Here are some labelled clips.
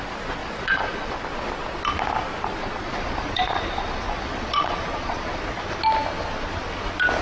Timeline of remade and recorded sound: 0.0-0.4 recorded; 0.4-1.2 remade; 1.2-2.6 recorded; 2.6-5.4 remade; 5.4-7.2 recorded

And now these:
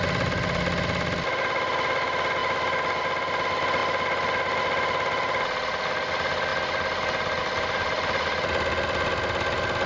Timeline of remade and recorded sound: 0.0-9.9 recorded

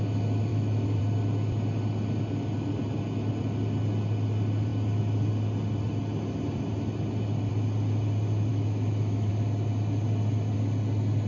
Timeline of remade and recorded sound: 0.0-0.5 recorded; 0.5-1.0 remade; 1.0-8.5 recorded; 8.5-9.3 remade; 9.3-11.3 recorded

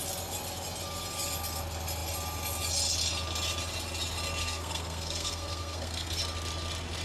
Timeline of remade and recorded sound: 0.0-4.4 recorded; 4.4-6.2 remade; 6.2-7.0 recorded